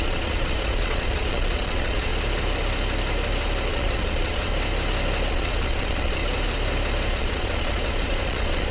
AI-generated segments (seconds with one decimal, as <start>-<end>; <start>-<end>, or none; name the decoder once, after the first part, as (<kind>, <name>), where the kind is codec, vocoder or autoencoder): 0.0-2.1 (vocoder, Vocos); 3.7-4.5; 5.3-6.2; 7.1-8.7